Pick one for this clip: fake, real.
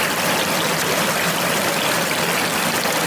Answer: real